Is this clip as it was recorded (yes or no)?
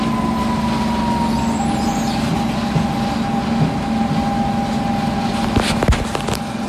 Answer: yes